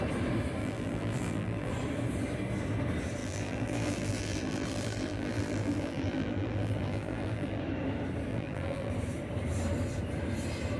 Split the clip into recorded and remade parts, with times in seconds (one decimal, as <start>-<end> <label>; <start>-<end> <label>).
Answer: 0.0-0.6 recorded; 0.6-1.7 remade; 1.7-3.2 recorded; 3.2-7.6 remade; 7.6-8.3 recorded; 8.3-8.9 remade; 8.9-10.8 recorded